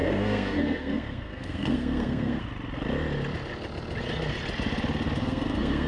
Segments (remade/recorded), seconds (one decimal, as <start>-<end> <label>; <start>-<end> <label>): 0.0-2.4 remade; 2.4-5.2 recorded; 5.2-5.9 remade